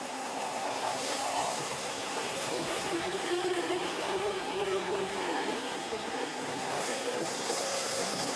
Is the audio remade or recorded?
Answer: remade